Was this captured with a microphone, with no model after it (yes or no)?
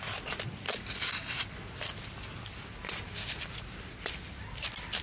no